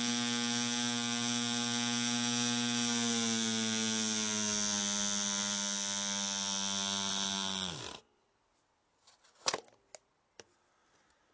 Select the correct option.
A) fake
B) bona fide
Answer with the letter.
B